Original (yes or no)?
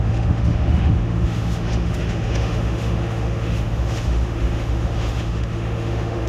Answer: no